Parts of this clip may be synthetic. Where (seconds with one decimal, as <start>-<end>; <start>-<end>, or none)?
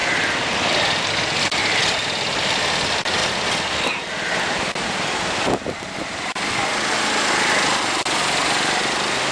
none